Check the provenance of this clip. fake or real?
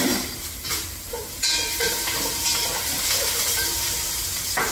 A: fake